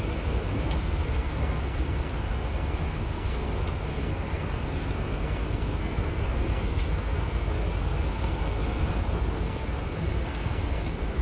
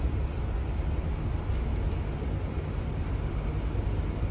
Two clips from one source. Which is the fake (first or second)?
first